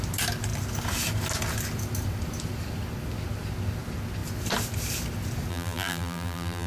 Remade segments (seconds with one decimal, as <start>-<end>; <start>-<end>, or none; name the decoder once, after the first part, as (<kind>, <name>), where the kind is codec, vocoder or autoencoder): 5.5-6.7 (vocoder, BigVGAN v2)